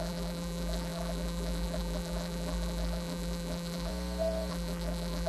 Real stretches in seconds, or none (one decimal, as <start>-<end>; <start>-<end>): 3.9-4.5